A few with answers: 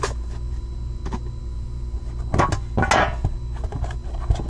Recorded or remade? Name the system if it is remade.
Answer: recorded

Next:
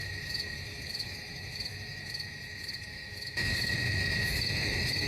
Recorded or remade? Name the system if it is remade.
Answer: remade, autoencoder, DAC-VAE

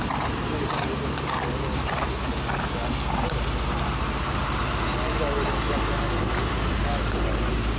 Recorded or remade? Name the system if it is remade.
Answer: recorded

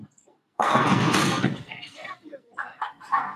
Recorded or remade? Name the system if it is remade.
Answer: remade, codec, SNAC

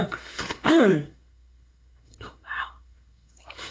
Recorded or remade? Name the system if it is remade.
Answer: remade, codec, SNAC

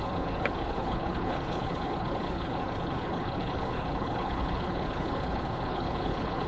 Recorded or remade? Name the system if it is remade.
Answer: remade, codec, HILCodec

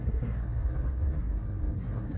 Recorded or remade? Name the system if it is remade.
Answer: remade, codec, SNAC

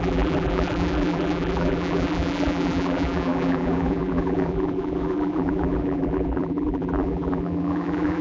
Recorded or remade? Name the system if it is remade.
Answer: remade, vocoder, BigVGAN v2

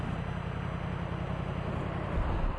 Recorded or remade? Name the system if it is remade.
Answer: recorded